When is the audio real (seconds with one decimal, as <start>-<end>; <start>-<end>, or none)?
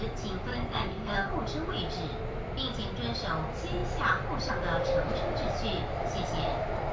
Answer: 0.0-0.5; 1.3-6.9